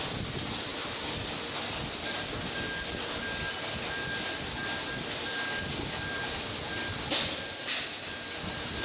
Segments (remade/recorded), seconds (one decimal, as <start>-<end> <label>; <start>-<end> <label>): 0.0-8.8 recorded

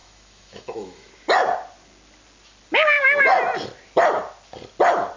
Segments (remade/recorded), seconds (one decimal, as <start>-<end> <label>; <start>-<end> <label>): 0.0-1.1 remade; 1.1-5.2 recorded

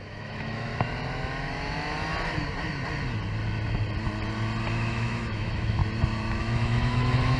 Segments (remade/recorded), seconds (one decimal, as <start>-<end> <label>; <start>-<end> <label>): 0.0-0.7 remade; 0.7-4.7 recorded; 4.7-5.8 remade; 5.8-6.4 recorded; 6.4-7.4 remade